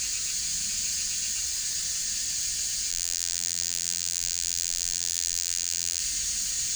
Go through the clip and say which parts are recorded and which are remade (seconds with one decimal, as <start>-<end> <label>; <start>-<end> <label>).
0.0-2.9 recorded; 2.9-6.0 remade; 6.0-6.8 recorded